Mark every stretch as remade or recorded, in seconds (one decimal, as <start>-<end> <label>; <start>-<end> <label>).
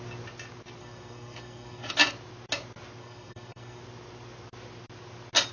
0.0-0.8 recorded; 0.8-1.9 remade; 1.9-3.0 recorded; 3.0-3.8 remade; 3.8-5.5 recorded